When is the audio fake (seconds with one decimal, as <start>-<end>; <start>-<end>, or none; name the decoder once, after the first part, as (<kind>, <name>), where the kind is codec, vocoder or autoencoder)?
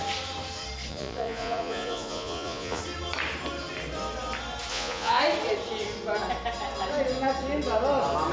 0.9-2.8 (vocoder, Vocos); 4.7-5.2